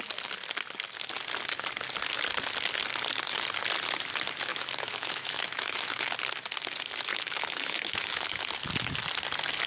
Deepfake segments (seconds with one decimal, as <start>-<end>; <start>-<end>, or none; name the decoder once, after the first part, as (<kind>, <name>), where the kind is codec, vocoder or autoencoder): 4.5-6.1 (autoencoder, DAC-VAE); 7.1-8.5